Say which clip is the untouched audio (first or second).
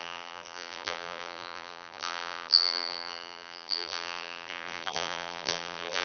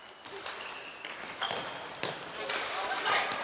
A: second